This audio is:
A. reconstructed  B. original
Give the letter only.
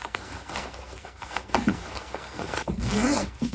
A